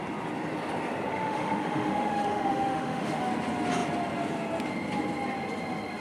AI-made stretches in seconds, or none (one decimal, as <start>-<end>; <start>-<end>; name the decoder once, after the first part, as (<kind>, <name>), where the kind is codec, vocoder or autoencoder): 1.1-3.2 (autoencoder, DAC-VAE)